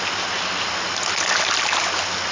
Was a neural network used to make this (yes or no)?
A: no